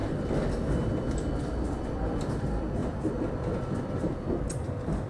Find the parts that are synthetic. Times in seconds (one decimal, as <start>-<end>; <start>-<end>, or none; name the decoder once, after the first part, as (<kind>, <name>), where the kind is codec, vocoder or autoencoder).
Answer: 2.8-5.1 (vocoder, BigVGAN v2)